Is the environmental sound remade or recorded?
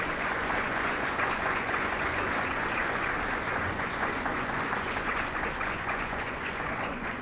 remade